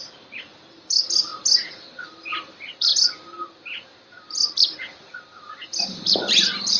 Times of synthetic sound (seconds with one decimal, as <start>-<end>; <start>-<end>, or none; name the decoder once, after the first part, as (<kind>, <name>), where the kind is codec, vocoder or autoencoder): 0.0-1.3 (vocoder, BigVGAN v2); 1.9-2.9; 4.3-6.8